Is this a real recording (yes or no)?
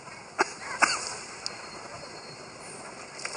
yes